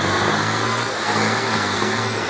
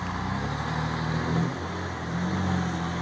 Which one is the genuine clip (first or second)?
second